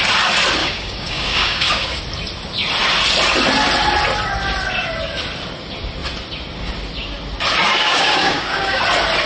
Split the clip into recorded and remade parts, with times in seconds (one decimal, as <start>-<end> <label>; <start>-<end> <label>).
0.0-0.6 recorded; 0.6-2.0 remade; 2.0-7.7 recorded; 7.7-8.8 remade; 8.8-9.3 recorded

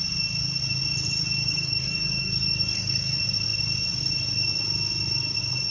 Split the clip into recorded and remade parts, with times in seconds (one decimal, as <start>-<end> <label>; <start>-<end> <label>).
0.0-1.4 recorded; 1.4-3.0 remade; 3.0-5.7 recorded

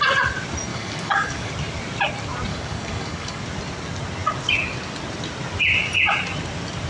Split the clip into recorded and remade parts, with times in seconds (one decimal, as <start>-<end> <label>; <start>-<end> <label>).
0.0-0.7 recorded; 0.7-1.5 remade; 1.5-2.5 recorded; 2.5-3.4 remade; 3.4-6.9 recorded